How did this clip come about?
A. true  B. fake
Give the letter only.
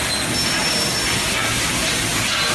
A